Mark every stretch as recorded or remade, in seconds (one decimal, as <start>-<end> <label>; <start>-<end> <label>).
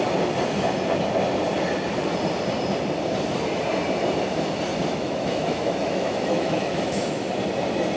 0.0-4.9 recorded; 4.9-7.3 remade; 7.3-8.0 recorded